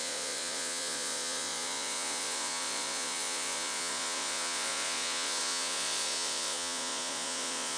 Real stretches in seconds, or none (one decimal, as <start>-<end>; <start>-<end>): none